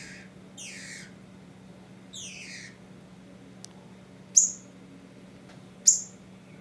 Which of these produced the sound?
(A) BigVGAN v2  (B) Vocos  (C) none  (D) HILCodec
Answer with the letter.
C